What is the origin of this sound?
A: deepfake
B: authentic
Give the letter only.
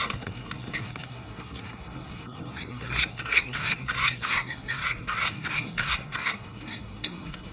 A